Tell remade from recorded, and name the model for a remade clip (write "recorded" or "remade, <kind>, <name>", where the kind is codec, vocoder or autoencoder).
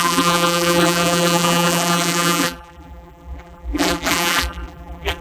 remade, vocoder, BigVGAN v2